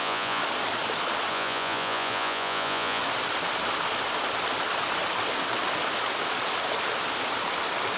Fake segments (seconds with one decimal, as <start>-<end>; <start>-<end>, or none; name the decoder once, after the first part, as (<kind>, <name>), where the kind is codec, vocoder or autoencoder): 0.0-0.4 (vocoder, Vocos); 1.3-3.0